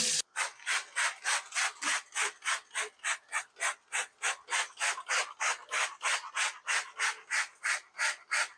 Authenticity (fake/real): real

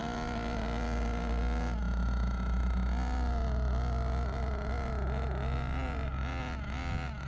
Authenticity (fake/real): real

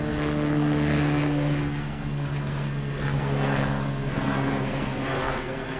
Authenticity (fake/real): fake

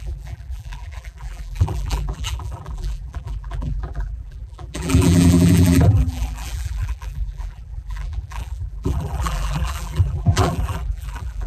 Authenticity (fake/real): fake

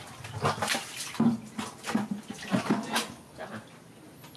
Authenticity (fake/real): real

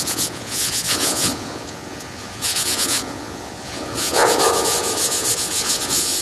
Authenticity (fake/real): fake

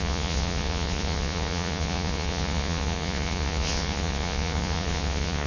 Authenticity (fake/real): fake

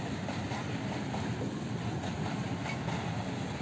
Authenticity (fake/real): real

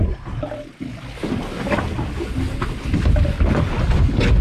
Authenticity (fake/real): real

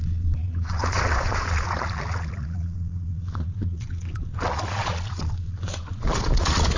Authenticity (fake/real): fake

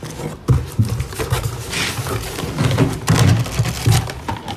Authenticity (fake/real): real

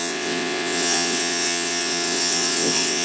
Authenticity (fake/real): fake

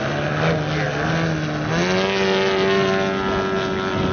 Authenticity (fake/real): real